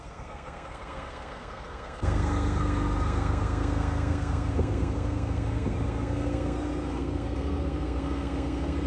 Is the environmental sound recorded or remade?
remade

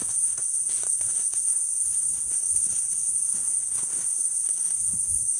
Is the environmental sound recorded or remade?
remade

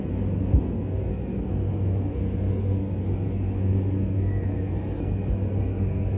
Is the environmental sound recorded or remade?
remade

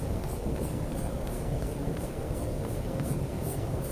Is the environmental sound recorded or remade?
remade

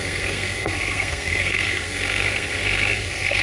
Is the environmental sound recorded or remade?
remade